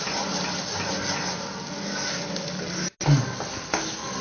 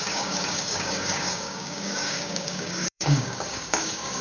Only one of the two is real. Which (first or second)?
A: first